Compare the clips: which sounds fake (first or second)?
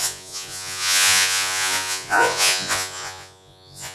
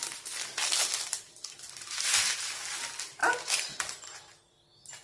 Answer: first